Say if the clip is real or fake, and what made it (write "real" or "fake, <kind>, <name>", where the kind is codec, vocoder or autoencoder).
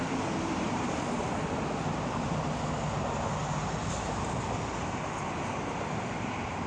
real